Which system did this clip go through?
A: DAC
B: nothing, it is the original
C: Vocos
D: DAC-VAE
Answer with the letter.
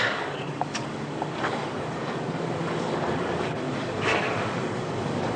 A